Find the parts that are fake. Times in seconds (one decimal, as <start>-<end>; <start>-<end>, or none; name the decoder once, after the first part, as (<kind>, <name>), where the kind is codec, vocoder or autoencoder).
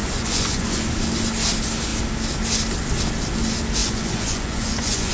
0.0-0.8 (vocoder, Vocos); 3.8-5.1